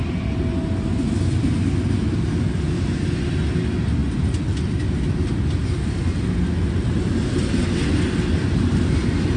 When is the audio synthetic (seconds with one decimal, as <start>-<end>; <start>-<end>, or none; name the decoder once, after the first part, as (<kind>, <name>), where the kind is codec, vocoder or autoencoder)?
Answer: none